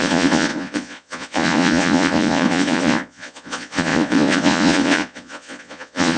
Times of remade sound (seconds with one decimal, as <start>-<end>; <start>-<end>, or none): 0.0-6.2